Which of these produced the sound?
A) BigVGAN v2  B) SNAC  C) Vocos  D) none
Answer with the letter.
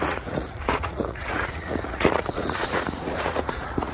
C